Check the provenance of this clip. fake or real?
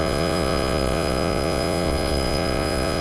fake